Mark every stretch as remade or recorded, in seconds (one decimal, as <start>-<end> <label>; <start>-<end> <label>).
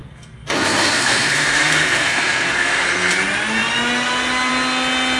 0.0-3.1 remade; 3.1-5.2 recorded